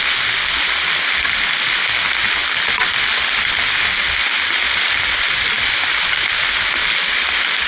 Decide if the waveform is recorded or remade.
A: recorded